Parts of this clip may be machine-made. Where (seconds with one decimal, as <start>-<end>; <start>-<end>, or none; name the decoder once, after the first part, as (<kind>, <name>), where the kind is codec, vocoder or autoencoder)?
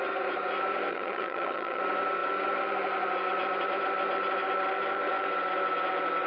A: 0.9-1.8 (vocoder, HiFi-GAN)